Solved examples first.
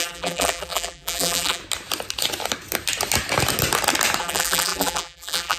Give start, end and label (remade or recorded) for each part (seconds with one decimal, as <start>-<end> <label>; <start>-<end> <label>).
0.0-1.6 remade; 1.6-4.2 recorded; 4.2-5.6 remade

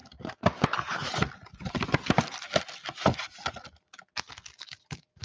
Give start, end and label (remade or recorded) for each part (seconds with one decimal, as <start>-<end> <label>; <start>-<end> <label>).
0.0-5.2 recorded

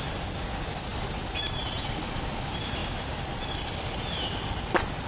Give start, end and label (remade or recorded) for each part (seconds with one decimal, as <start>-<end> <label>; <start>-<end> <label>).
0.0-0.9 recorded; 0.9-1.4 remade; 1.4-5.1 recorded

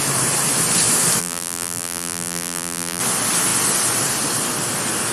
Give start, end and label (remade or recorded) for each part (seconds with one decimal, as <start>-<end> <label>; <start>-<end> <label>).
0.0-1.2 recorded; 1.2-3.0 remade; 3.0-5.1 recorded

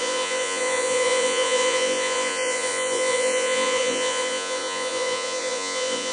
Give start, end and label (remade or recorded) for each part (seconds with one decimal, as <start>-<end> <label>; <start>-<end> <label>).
0.0-6.1 remade

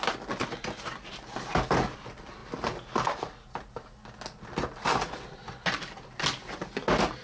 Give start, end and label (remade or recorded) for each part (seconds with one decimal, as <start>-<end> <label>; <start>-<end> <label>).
0.0-7.2 recorded

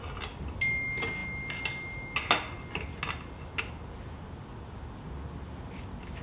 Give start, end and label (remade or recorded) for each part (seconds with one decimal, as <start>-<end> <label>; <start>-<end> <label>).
0.0-6.2 recorded